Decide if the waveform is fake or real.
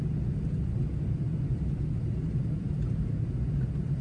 real